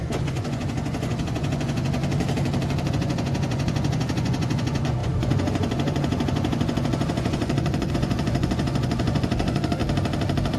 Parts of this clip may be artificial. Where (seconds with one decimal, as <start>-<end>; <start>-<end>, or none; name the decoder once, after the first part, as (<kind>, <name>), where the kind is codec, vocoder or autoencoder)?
0.0-2.0 (vocoder, Vocos); 2.9-9.8